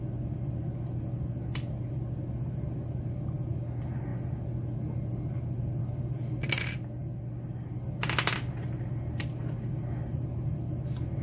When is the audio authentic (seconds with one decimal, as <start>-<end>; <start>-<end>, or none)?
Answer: 0.0-11.2